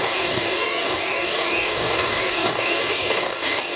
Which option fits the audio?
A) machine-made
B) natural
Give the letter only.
A